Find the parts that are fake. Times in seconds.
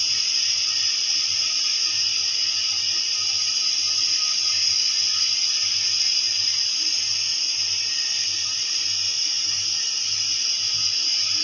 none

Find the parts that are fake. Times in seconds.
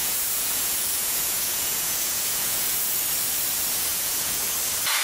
0.0-3.0 (vocoder, Vocos); 3.9-4.5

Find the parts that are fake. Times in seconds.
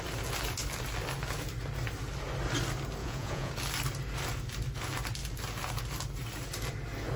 3.0-3.5 (vocoder, Vocos)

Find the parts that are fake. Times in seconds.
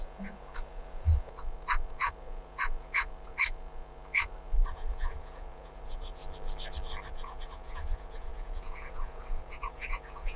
0.0-6.2 (vocoder, Vocos); 7.1-10.4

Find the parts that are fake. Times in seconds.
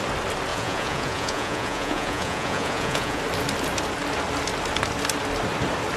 0.5-3.2 (vocoder, Vocos)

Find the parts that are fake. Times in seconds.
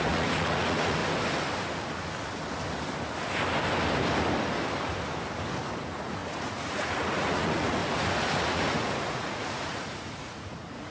0.0-1.0 (vocoder, Vocos); 5.8-7.8; 8.4-10.9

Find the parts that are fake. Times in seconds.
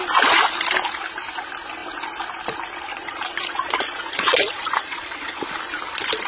2.9-5.4 (vocoder, Vocos)